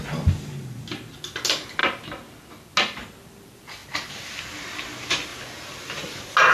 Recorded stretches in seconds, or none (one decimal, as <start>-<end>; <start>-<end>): 0.0-6.5